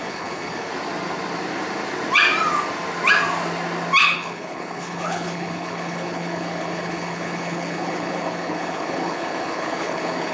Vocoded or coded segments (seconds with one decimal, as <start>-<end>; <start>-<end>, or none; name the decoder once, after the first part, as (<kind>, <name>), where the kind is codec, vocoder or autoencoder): 0.0-0.7 (codec, HILCodec); 4.0-10.3